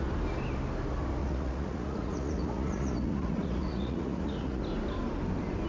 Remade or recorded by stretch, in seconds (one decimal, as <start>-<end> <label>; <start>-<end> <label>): 0.0-1.2 recorded; 1.2-4.6 remade; 4.6-5.7 recorded